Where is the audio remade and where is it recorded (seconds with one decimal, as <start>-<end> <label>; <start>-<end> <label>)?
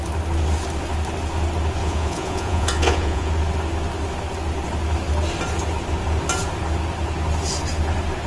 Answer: 0.0-1.8 recorded; 1.8-3.3 remade; 3.3-8.3 recorded